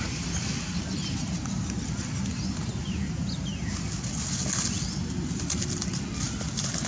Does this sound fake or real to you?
real